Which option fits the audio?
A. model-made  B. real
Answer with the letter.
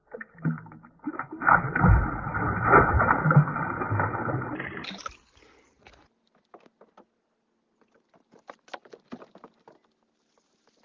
B